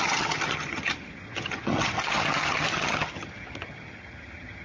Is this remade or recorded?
remade